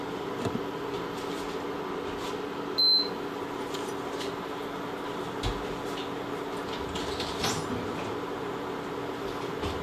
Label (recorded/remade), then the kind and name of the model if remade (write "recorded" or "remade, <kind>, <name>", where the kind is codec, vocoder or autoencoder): recorded